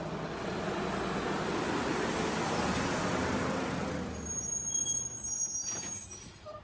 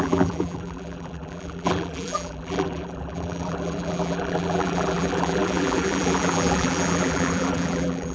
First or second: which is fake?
second